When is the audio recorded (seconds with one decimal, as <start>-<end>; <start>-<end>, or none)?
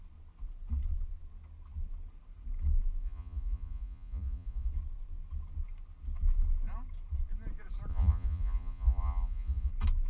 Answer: 0.0-3.0; 4.7-7.9; 9.7-10.1